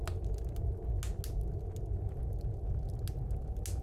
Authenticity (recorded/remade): recorded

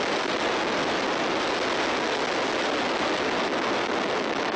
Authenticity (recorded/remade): recorded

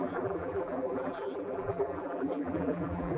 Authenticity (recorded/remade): remade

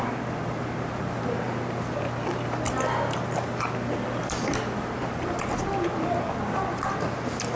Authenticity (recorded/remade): recorded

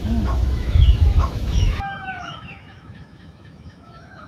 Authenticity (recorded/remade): remade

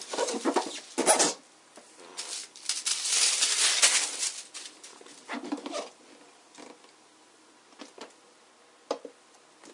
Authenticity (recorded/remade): recorded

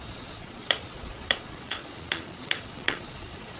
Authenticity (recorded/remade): remade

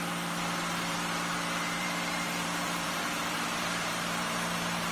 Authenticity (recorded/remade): remade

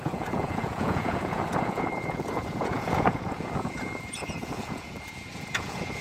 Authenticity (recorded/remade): remade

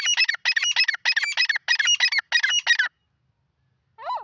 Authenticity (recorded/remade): recorded